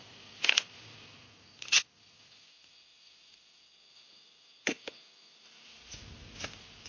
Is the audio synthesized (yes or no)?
no